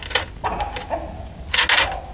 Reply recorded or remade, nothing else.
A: recorded